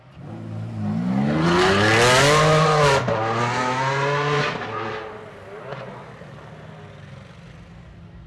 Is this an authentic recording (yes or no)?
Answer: yes